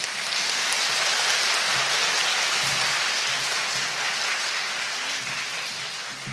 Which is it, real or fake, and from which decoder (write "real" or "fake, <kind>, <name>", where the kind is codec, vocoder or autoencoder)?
real